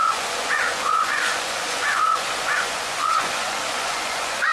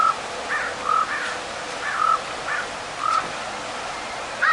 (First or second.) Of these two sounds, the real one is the second